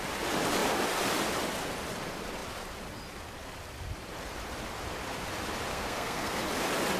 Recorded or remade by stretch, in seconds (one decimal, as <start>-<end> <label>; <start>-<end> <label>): 0.0-5.7 recorded; 5.7-6.4 remade; 6.4-7.0 recorded